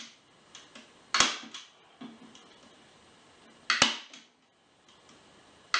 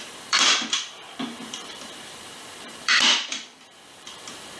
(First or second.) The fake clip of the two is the second